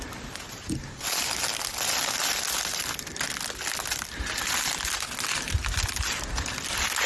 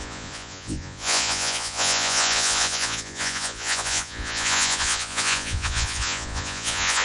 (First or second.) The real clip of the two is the first